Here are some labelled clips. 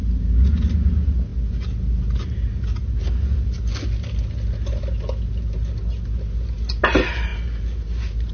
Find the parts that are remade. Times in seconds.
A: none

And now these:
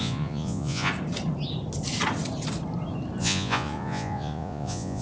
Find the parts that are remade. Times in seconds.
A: 0.0-0.9 (vocoder, Vocos); 3.2-5.0

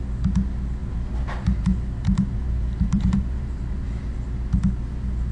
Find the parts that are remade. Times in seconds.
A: 0.8-4.0 (vocoder, BigVGAN v2)

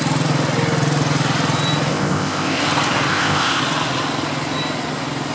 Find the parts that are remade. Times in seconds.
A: 1.9-2.6 (codec, ZipCodec); 3.1-3.6